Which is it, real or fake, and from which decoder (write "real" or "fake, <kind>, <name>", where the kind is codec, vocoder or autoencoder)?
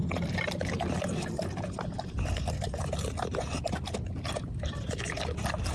real